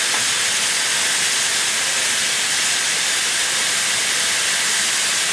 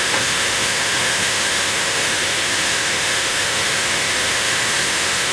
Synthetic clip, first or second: second